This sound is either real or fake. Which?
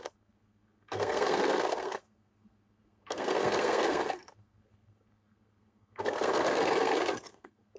fake